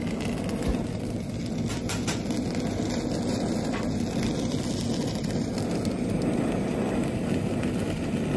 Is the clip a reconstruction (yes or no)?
no